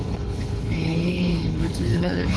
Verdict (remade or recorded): remade